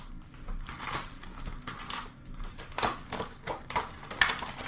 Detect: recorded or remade recorded